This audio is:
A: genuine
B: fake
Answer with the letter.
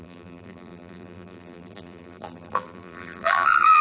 B